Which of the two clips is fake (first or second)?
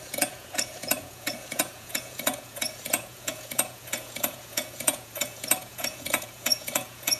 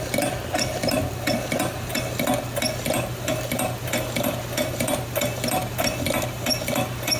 first